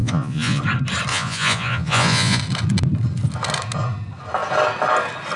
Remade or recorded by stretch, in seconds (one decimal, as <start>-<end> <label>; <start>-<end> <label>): 0.0-0.6 remade; 0.6-1.1 recorded; 1.1-2.4 remade; 2.4-5.4 recorded